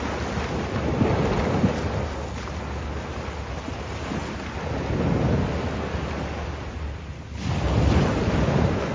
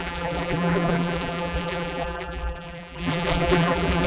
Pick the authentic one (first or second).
first